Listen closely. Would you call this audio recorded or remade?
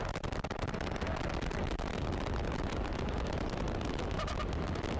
recorded